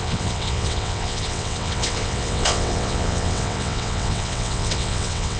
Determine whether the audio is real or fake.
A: fake